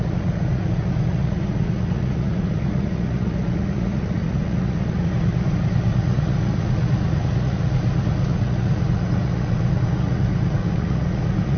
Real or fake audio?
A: fake